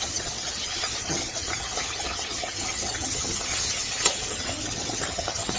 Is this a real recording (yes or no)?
no